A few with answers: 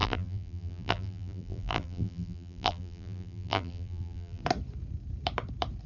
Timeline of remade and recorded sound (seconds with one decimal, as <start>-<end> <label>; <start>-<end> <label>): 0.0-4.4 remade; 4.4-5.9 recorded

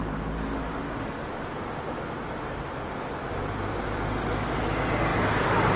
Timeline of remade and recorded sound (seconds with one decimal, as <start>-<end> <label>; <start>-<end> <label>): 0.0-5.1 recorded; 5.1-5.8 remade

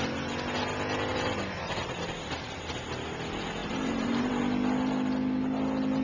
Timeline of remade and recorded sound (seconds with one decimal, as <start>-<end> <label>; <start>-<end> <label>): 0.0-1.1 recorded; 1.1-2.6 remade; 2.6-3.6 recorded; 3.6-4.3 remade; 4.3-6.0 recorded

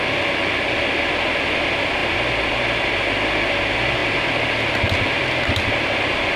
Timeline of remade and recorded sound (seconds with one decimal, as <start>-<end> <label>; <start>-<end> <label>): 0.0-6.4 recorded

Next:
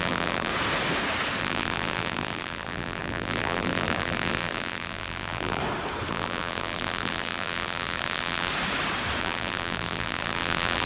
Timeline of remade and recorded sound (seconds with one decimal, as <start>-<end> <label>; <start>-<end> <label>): 0.0-0.5 remade; 0.5-1.4 recorded; 1.4-5.6 remade; 5.6-6.1 recorded; 6.1-8.5 remade; 8.5-9.2 recorded; 9.2-10.9 remade